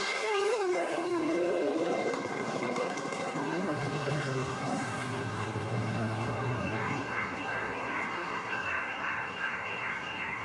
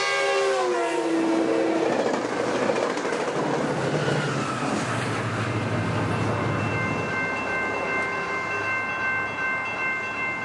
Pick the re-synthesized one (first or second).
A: first